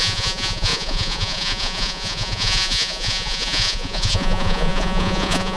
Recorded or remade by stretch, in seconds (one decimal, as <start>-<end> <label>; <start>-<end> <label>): 0.0-5.6 remade